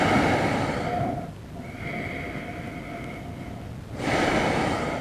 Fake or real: real